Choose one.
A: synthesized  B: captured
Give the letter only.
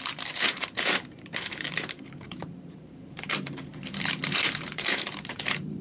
A